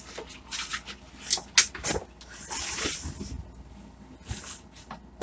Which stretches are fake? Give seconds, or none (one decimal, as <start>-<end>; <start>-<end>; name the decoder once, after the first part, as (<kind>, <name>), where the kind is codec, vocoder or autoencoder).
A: none